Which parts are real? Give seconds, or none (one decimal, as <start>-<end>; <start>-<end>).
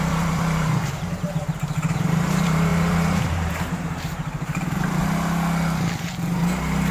5.0-6.9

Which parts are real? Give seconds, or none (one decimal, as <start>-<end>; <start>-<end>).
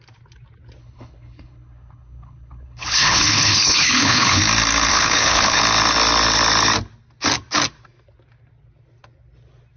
0.0-0.8; 4.4-4.9; 5.6-9.8